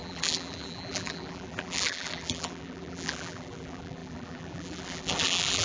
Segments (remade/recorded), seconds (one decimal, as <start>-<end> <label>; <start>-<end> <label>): 0.0-5.6 remade